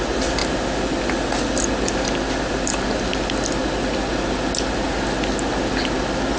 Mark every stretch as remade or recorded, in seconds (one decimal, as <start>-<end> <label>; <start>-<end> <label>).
0.0-6.4 recorded